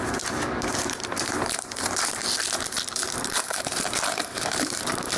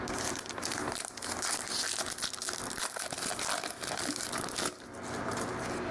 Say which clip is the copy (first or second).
first